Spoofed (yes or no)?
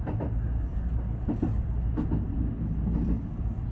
no